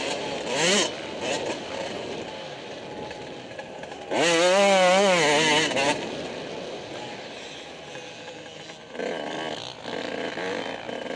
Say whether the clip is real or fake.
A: real